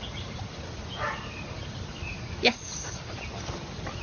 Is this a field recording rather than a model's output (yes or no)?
yes